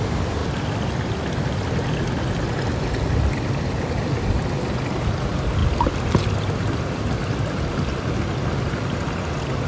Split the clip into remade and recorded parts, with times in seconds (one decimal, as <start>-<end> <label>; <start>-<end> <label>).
0.0-9.7 recorded